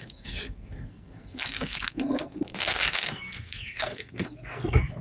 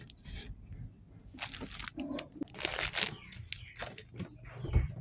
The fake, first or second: first